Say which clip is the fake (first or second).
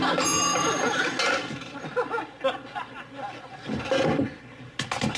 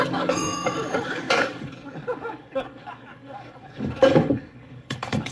second